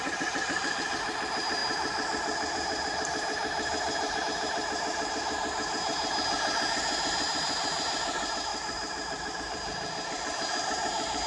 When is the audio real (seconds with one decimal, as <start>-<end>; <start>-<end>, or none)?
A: 0.0-8.5; 9.4-11.3